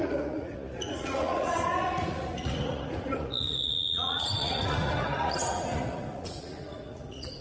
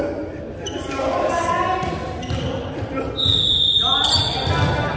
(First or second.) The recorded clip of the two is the second